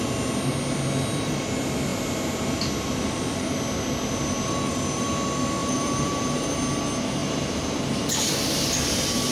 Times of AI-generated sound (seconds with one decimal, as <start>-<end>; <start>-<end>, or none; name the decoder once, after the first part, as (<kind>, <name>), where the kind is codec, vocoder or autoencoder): 5.6-6.5 (vocoder, BigVGAN v2); 7.2-7.8